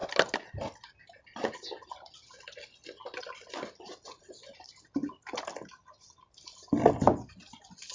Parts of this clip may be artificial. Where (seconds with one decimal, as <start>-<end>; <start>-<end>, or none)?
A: none